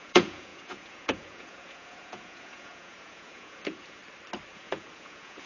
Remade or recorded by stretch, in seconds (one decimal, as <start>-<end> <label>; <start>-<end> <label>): 0.0-4.0 remade; 4.0-4.5 recorded; 4.5-5.5 remade